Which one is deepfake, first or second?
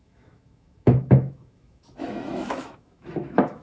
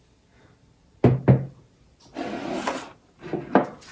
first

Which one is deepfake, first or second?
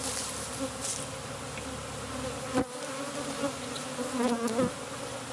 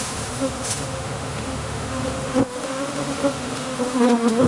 second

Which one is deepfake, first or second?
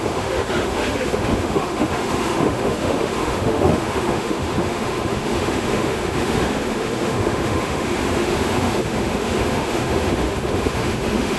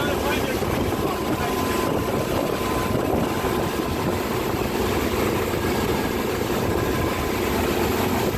first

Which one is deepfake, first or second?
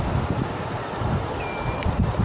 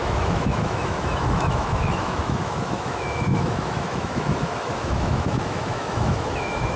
second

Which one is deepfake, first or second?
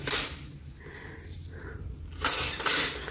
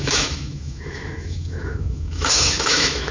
second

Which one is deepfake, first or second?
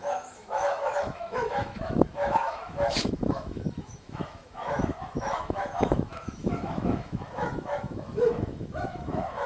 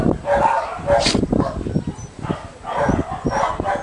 first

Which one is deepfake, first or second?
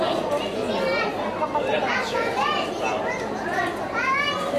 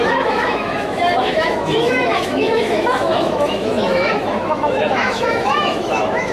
second